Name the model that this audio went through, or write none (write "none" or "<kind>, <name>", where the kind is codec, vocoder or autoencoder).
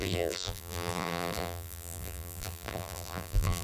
vocoder, BigVGAN v2